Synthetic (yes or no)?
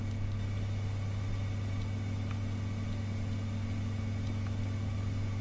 no